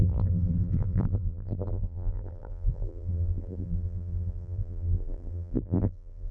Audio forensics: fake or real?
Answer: fake